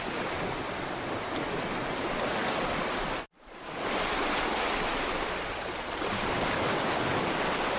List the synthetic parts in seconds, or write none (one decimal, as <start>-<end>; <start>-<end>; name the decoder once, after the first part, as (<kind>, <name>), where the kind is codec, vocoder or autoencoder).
none